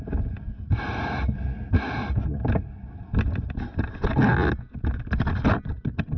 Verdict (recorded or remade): recorded